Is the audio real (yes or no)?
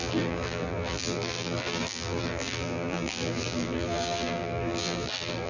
no